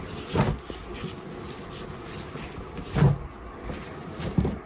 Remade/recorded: recorded